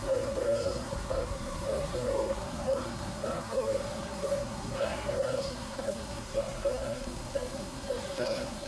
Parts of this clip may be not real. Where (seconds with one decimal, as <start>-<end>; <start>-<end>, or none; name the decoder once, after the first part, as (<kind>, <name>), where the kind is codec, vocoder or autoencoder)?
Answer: 0.0-8.7 (codec, SNAC)